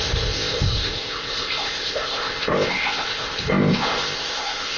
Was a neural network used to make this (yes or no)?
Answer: yes